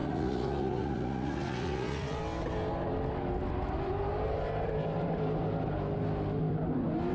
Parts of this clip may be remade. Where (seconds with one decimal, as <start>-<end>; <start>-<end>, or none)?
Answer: 0.0-2.2